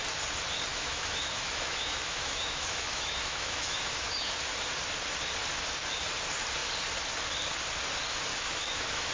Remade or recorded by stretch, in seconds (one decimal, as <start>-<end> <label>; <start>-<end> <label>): 0.0-0.7 recorded; 0.7-4.3 remade; 4.3-8.3 recorded; 8.3-9.1 remade